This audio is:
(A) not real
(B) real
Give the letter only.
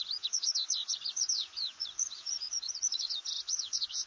A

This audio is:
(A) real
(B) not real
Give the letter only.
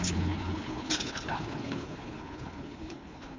B